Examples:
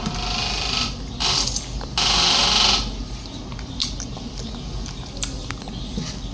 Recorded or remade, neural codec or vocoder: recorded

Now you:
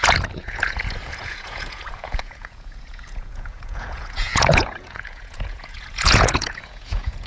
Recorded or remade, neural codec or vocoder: remade, vocoder, Vocos